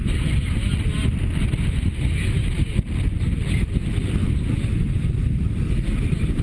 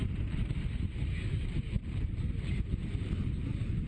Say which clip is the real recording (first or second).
first